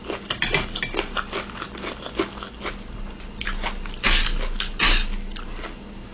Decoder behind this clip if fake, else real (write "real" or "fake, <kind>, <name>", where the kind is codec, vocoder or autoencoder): real